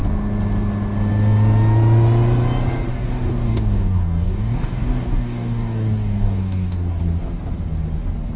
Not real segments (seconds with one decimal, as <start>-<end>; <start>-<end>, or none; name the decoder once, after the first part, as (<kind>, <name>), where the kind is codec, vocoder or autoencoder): 2.9-7.0 (codec, DAC)